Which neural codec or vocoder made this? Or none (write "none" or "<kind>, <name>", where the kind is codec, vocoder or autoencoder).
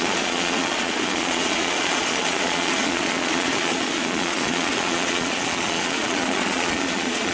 vocoder, Vocos